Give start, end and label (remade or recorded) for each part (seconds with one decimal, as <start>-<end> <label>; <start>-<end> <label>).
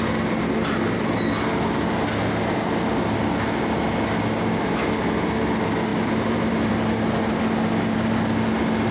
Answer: 0.0-5.9 recorded; 5.9-6.7 remade; 6.7-8.9 recorded